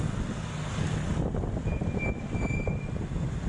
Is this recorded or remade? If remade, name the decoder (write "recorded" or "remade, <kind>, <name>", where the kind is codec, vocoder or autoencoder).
recorded